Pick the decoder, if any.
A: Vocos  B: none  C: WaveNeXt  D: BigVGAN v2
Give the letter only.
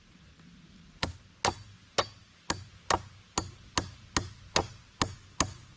B